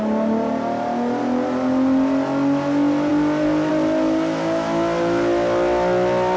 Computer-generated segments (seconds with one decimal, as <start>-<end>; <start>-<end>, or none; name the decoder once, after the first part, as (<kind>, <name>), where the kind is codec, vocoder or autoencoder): none